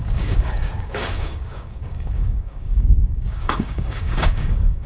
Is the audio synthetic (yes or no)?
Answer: yes